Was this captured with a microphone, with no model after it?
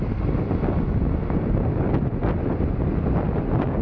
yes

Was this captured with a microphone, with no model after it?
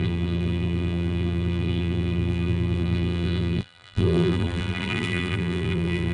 no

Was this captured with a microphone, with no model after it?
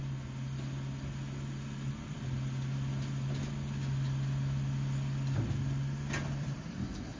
yes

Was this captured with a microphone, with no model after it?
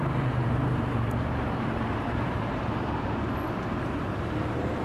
no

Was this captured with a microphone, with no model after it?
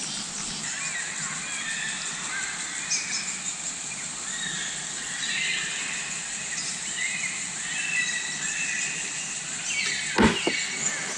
yes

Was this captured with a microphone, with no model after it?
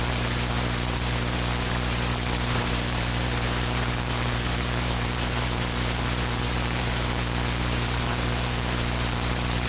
no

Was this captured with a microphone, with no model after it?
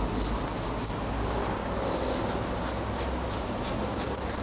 no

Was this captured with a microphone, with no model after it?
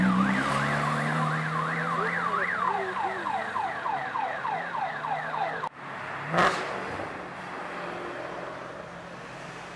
yes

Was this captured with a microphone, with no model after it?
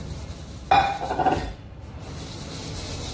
yes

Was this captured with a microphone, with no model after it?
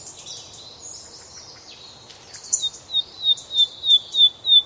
yes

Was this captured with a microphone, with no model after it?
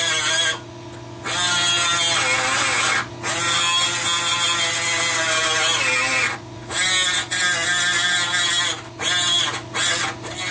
yes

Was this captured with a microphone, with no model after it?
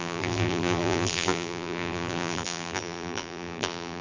no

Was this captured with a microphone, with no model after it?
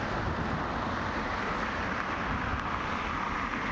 no